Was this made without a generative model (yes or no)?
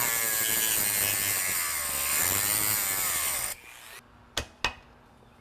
yes